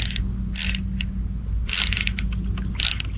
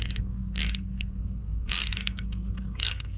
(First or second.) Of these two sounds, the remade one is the second